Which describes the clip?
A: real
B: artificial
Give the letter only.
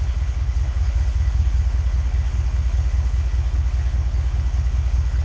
B